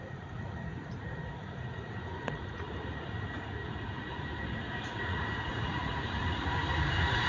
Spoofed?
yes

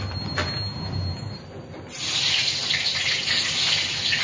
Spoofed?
no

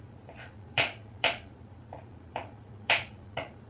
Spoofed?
yes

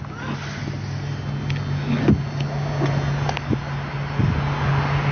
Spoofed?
no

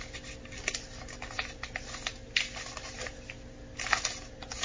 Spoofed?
no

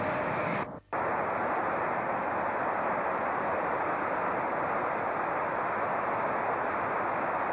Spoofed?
no